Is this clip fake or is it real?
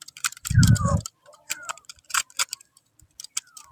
fake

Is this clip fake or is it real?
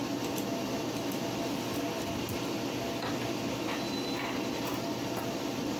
real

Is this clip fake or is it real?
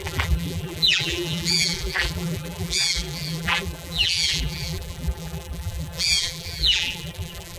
fake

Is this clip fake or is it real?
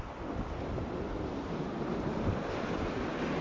real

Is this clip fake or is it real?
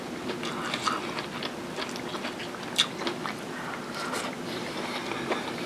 real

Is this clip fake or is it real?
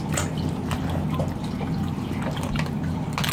real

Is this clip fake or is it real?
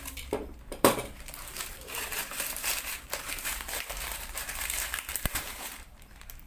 fake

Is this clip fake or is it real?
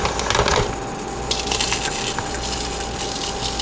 real